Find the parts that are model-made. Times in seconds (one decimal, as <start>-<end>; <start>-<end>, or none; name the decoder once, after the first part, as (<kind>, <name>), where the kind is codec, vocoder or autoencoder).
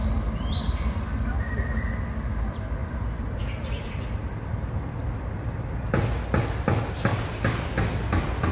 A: 2.8-3.4 (vocoder, BigVGAN v2); 7.1-7.6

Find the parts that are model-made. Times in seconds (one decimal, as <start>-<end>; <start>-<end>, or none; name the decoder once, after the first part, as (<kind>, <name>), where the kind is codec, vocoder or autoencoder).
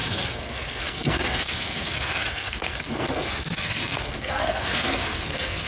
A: 0.0-5.7 (codec, SNAC)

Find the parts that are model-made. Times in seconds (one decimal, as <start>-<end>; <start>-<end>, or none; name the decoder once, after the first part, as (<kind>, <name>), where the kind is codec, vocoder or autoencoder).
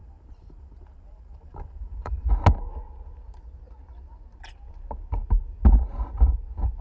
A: 0.0-2.3 (vocoder, BigVGAN v2)